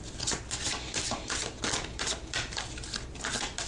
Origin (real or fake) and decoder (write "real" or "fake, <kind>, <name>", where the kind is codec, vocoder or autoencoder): real